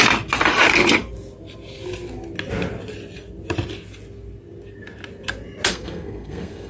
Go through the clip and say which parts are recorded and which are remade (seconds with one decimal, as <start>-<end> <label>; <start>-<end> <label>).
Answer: 0.0-5.7 recorded; 5.7-6.7 remade